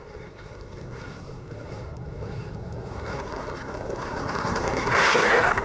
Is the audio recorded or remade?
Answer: remade